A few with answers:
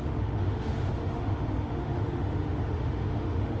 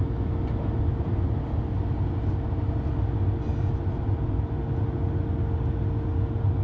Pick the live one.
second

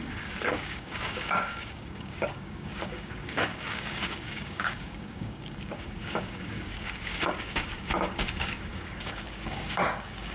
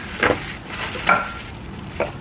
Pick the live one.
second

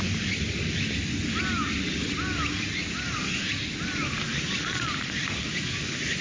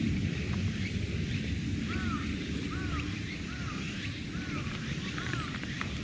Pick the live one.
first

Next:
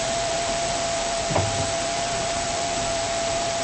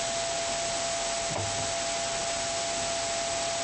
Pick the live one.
second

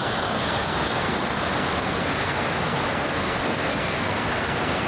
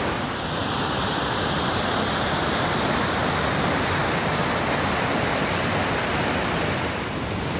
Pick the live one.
second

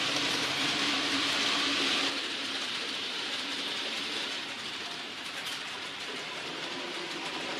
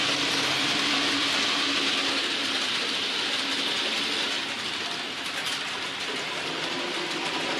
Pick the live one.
second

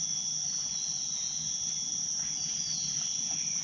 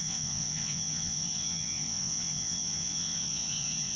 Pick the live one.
first